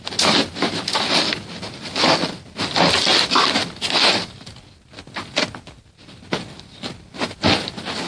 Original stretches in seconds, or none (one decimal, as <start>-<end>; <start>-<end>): 0.0-8.1